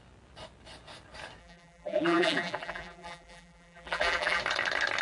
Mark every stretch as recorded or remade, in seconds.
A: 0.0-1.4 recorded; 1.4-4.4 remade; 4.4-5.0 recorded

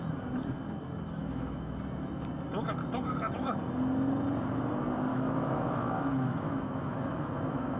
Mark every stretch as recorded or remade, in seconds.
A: 0.0-1.2 recorded; 1.2-1.8 remade; 1.8-5.1 recorded; 5.1-7.8 remade

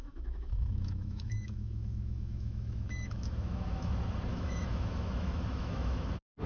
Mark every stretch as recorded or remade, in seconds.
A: 0.0-3.9 remade; 3.9-4.3 recorded; 4.3-6.1 remade; 6.1-6.5 recorded